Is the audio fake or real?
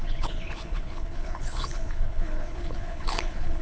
fake